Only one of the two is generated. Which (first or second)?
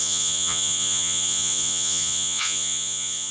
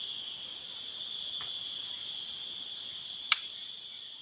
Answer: first